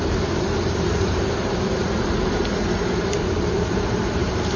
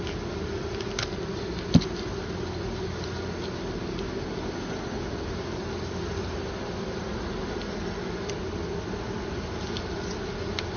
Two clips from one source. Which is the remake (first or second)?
first